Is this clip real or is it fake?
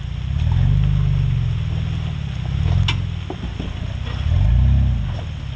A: real